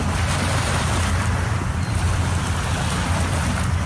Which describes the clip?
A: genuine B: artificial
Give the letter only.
A